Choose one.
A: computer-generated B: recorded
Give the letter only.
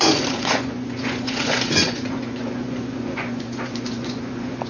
A